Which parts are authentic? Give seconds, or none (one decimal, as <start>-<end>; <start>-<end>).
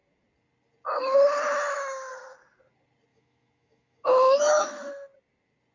0.0-1.5; 2.1-3.1; 4.9-5.7